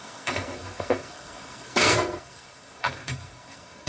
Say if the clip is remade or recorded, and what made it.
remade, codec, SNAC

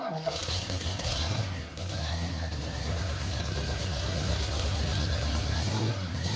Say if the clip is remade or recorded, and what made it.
remade, codec, SNAC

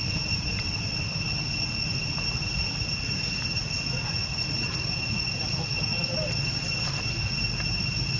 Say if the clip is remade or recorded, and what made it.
recorded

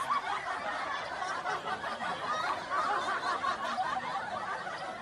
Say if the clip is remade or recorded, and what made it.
recorded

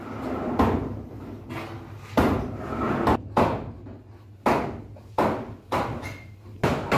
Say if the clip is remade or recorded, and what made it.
recorded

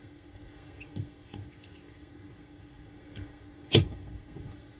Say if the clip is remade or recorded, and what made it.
remade, codec, SNAC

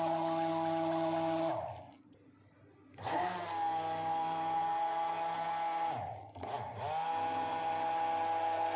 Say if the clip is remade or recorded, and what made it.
recorded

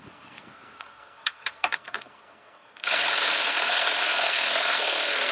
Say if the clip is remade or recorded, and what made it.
remade, codec, SNAC